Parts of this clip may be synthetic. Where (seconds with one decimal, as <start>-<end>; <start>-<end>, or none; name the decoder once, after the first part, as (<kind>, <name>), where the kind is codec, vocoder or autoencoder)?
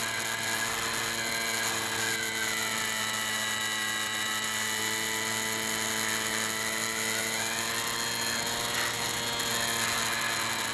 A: none